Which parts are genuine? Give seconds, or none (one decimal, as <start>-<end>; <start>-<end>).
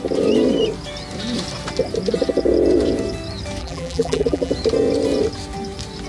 0.0-3.6; 4.5-6.1